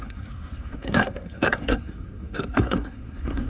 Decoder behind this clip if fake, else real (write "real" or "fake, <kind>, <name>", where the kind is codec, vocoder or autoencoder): fake, codec, SNAC